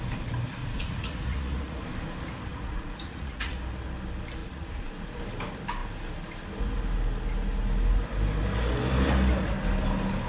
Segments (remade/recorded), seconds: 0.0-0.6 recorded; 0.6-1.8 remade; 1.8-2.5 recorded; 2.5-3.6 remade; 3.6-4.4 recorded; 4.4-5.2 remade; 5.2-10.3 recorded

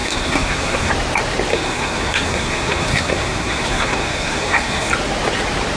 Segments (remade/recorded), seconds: 0.0-0.9 remade; 0.9-1.5 recorded; 1.5-4.9 remade; 4.9-5.8 recorded

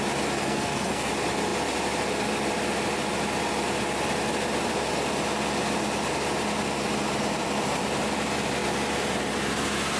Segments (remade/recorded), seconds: 0.0-0.4 recorded; 0.4-1.1 remade; 1.1-10.0 recorded

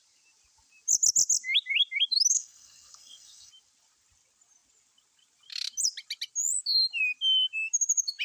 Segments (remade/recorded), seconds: 0.0-2.3 recorded; 2.3-3.5 remade; 3.5-8.2 recorded

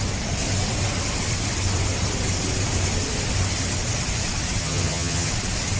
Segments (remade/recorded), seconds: 0.0-4.6 recorded; 4.6-5.3 remade; 5.3-5.8 recorded

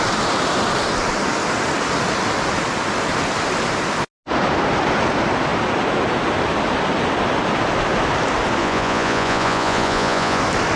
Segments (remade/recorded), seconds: 0.0-8.6 recorded; 8.6-10.4 remade; 10.4-10.8 recorded

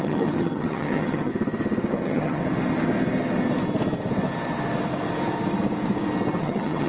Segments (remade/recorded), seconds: 0.0-1.3 remade; 1.3-1.9 recorded; 1.9-2.4 remade; 2.4-6.4 recorded; 6.4-6.9 remade